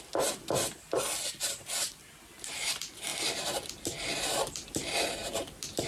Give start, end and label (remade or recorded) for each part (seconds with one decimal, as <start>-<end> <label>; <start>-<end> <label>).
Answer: 0.0-5.9 recorded